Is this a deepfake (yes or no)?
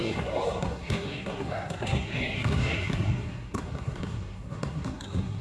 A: yes